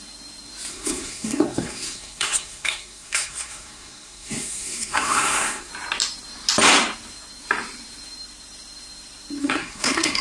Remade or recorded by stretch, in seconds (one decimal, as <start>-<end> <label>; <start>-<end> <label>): 0.0-0.7 recorded; 0.7-5.7 remade; 5.7-9.4 recorded; 9.4-10.2 remade